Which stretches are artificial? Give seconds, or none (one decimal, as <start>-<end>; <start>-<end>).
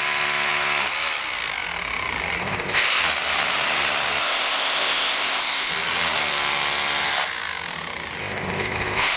2.4-3.0; 4.2-5.7; 8.2-9.2